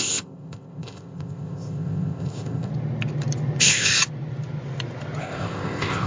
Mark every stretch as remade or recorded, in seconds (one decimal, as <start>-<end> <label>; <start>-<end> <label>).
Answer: 0.0-2.7 remade; 2.7-3.6 recorded; 3.6-4.0 remade; 4.0-5.2 recorded; 5.2-6.1 remade